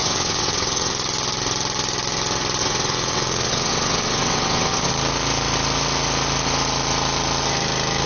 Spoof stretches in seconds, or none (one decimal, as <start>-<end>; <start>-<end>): 0.0-0.9; 2.6-4.9